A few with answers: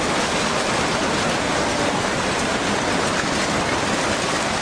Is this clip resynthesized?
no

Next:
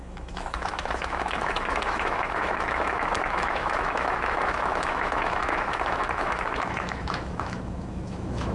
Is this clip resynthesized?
yes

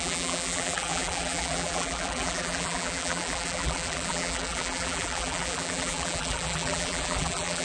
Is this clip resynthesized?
yes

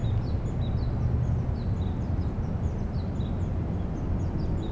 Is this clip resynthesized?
no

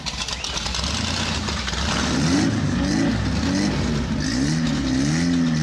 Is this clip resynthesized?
no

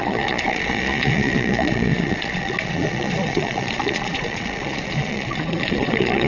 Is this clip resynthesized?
yes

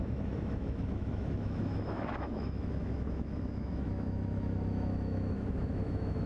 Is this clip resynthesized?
yes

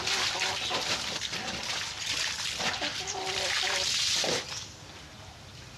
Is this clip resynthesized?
no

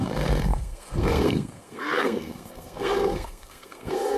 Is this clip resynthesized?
yes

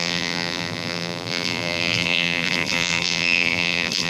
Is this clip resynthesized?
yes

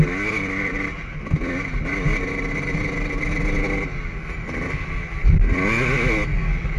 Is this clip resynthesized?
no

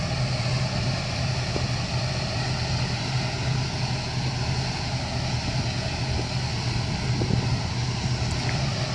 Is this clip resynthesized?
no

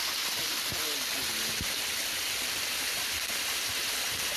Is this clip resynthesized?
no